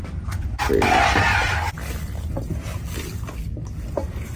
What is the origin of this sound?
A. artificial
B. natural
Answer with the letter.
B